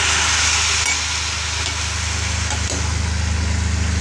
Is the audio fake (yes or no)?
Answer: no